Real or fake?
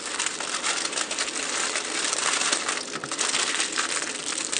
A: real